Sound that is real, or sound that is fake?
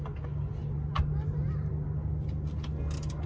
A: real